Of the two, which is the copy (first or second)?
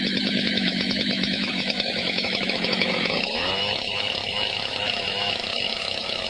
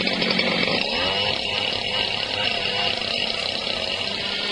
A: first